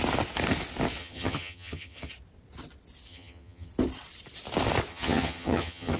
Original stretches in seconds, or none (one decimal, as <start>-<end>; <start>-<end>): 0.0-1.0; 2.1-3.1; 3.7-4.9